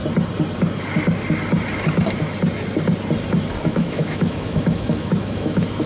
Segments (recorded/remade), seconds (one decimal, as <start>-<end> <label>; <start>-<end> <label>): 0.0-3.5 recorded; 3.5-5.9 remade